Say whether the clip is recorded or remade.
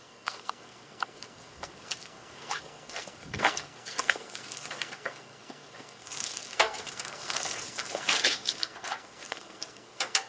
remade